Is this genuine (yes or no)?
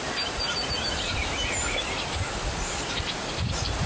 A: yes